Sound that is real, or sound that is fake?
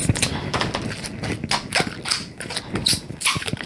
real